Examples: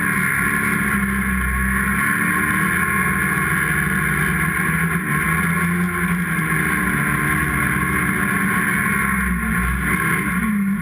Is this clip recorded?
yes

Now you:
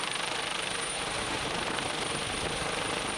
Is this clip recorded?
no